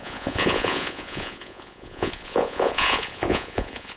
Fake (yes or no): yes